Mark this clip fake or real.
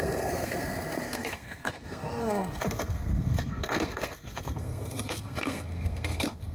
fake